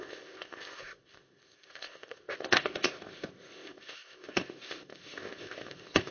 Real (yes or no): no